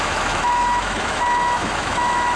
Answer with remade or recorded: remade